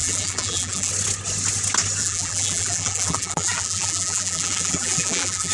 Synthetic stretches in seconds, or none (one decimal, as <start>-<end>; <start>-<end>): 0.0-0.9; 2.0-5.5